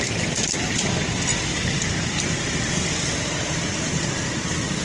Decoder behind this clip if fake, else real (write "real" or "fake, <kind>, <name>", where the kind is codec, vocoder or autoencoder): fake, vocoder, BigVGAN v2